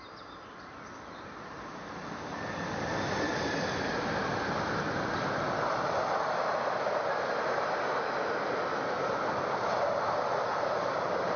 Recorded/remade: recorded